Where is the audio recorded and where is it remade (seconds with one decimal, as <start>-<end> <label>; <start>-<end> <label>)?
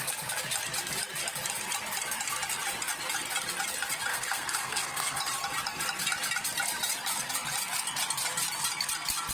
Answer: 0.0-4.1 recorded; 4.1-5.2 remade; 5.2-9.3 recorded